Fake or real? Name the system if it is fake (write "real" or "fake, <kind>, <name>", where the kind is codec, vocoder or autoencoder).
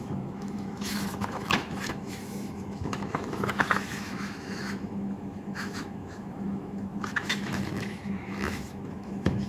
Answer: fake, autoencoder, DAC-VAE